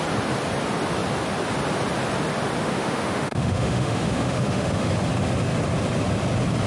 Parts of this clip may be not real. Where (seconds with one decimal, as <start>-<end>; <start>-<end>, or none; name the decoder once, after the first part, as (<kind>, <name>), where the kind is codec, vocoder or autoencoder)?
2.6-4.9 (autoencoder, DAC-VAE)

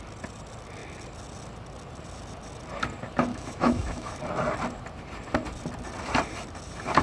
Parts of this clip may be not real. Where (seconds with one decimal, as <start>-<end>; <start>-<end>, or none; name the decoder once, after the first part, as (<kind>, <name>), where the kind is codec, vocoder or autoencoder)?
3.3-4.1 (autoencoder, DAC-VAE)